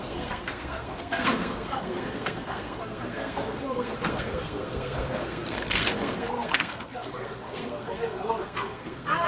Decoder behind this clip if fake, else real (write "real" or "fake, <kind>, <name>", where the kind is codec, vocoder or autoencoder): fake, codec, SNAC